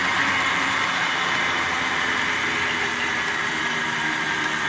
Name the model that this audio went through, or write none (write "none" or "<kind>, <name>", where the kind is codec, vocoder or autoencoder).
vocoder, BigVGAN v2